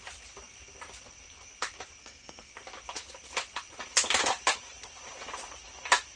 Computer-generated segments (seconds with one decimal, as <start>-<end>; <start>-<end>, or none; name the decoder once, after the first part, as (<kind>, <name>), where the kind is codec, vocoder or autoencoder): 2.0-2.5 (codec, SNAC)